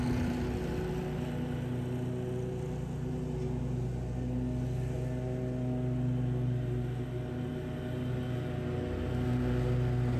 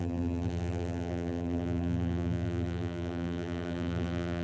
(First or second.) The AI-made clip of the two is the second